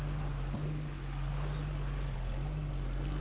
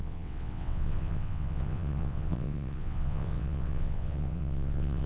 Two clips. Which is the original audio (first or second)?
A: first